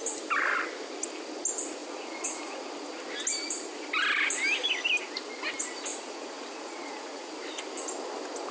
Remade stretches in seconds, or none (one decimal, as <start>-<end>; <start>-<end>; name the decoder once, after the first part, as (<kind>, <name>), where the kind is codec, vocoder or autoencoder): 1.8-2.7 (vocoder, Vocos); 5.9-7.3